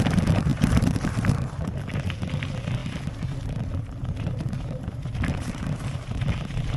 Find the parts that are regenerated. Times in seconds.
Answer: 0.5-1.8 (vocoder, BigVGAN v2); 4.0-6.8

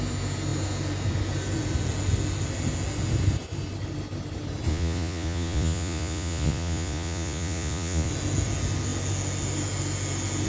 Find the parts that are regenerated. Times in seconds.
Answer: 4.7-8.1 (vocoder, Vocos)

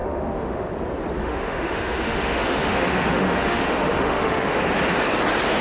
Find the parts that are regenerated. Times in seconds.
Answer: 0.0-0.7 (autoencoder, DAC-VAE); 1.2-4.6

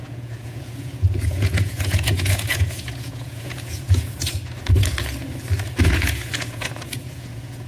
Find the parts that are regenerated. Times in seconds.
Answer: 0.0-4.4 (vocoder, Vocos); 5.8-7.7

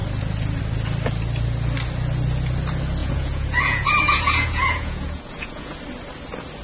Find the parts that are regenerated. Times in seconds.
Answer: 3.0-5.8 (vocoder, Vocos)

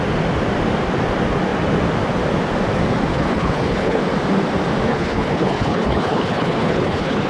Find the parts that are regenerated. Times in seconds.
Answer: 3.1-4.0 (codec, HILCodec); 4.9-7.3

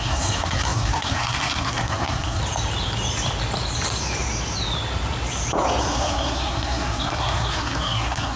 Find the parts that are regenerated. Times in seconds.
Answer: 0.0-2.4 (codec, SNAC); 5.8-8.4

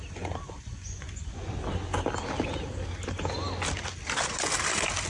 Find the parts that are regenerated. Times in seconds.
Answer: 0.4-1.5 (vocoder, Vocos)